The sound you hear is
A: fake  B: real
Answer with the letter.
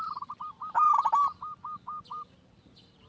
B